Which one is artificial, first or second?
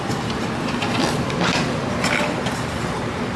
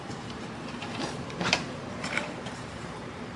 second